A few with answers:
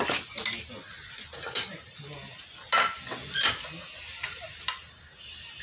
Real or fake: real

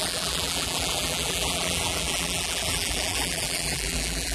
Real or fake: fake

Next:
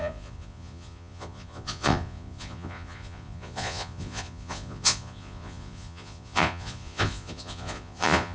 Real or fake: fake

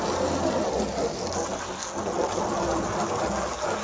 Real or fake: real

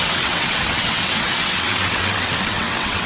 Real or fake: fake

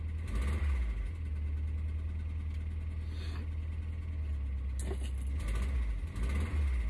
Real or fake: real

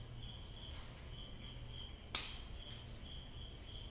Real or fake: real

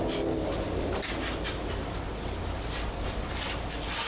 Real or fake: real